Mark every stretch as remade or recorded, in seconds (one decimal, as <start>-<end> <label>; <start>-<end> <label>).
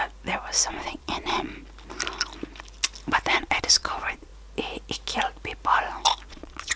0.0-0.7 recorded; 0.7-1.5 remade; 1.5-3.4 recorded; 3.4-4.3 remade; 4.3-6.3 recorded; 6.3-6.8 remade